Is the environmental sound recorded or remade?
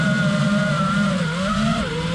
recorded